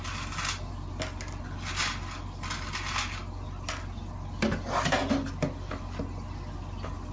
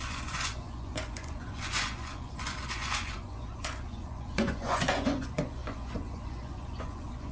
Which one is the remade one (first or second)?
second